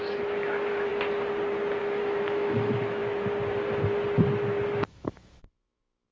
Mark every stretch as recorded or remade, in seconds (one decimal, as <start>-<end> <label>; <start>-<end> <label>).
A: 0.0-0.9 remade; 0.9-1.8 recorded; 1.8-3.0 remade; 3.0-4.9 recorded; 4.9-6.1 remade